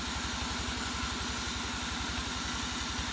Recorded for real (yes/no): yes